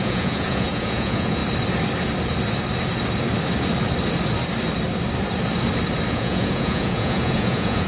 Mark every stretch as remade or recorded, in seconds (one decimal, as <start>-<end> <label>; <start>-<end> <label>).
0.0-1.4 remade; 1.4-6.1 recorded; 6.1-7.9 remade